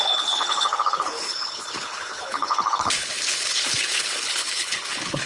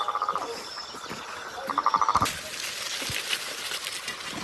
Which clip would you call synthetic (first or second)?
first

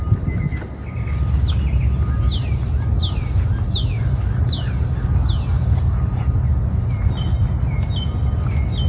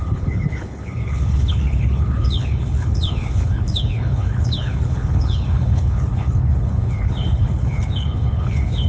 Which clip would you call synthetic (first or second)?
second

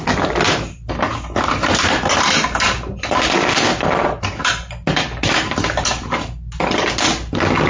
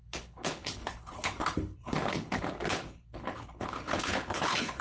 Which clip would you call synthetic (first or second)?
second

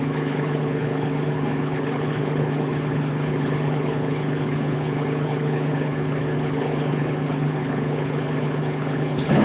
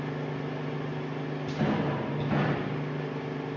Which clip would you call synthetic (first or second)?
first